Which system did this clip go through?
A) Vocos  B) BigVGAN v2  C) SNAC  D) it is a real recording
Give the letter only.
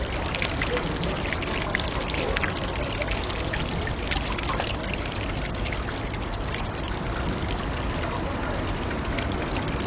D